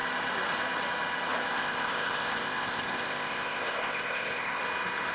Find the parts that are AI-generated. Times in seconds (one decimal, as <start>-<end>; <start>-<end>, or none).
1.5-4.6